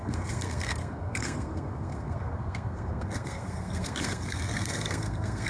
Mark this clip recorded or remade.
remade